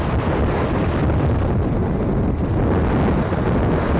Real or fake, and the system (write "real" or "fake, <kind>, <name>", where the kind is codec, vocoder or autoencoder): real